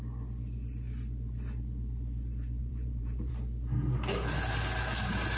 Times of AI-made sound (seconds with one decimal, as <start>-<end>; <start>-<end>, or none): 2.6-3.3